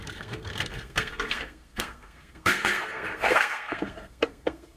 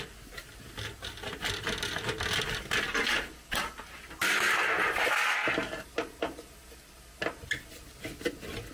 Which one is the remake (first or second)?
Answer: first